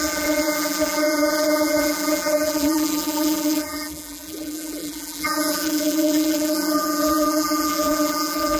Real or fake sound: fake